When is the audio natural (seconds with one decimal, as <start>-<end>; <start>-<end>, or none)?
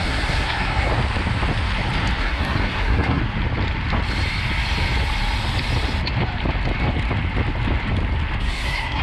0.9-2.2; 3.2-8.4